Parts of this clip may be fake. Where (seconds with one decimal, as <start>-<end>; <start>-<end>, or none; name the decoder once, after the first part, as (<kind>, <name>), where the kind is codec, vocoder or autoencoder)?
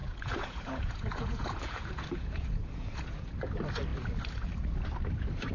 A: 0.0-3.3 (vocoder, Vocos)